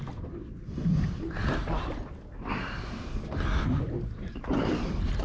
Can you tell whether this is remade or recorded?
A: recorded